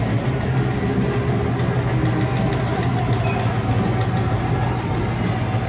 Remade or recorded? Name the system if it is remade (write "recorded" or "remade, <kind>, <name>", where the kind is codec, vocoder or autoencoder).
recorded